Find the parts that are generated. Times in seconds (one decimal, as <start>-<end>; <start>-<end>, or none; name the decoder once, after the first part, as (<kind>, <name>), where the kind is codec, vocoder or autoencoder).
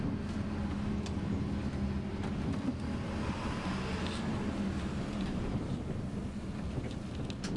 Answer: none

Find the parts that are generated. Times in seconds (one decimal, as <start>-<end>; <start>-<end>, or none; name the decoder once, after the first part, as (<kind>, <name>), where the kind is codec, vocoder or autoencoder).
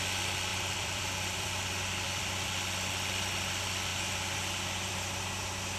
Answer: 0.5-2.5 (vocoder, BigVGAN v2)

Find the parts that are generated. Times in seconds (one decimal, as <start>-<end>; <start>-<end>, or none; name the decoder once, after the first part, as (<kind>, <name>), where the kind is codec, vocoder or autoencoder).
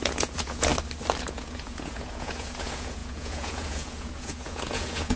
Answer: 0.0-0.7 (vocoder, Vocos); 1.2-5.2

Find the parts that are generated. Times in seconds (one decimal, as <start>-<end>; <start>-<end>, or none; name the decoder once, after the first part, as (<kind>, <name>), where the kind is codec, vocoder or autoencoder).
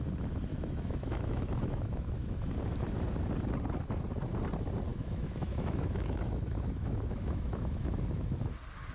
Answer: 0.5-2.5 (autoencoder, DAC-VAE); 4.9-8.5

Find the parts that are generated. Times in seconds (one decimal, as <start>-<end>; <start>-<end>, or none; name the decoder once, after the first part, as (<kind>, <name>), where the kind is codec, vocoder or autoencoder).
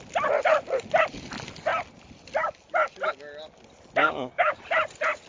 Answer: 4.0-4.6 (codec, DAC)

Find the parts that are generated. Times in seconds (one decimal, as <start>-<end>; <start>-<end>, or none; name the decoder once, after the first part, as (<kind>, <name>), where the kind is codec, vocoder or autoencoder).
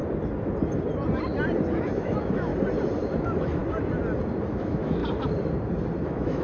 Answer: 1.7-2.5 (autoencoder, DAC-VAE); 3.2-3.6; 4.5-5.0; 6.0-6.4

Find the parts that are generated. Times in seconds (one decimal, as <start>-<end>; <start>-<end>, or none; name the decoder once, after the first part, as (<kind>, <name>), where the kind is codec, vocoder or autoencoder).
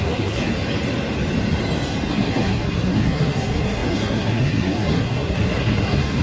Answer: 0.0-0.5 (codec, SNAC); 2.1-6.2